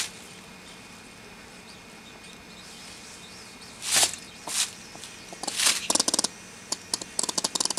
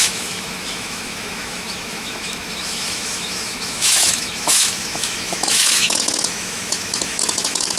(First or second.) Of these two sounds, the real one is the first